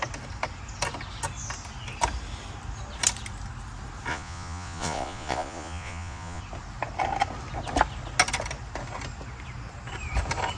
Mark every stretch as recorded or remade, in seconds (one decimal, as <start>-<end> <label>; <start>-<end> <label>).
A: 0.0-4.1 recorded; 4.1-6.4 remade; 6.4-10.6 recorded